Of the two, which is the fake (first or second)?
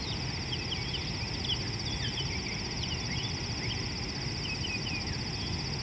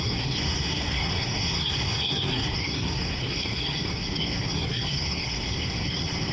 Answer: second